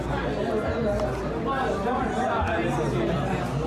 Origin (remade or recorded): recorded